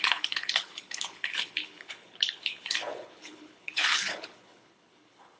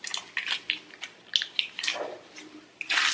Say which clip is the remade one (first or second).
first